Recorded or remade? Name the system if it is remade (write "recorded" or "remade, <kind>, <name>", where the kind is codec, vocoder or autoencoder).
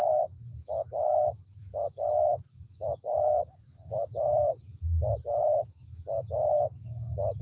remade, autoencoder, DAC-VAE